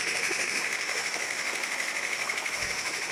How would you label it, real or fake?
fake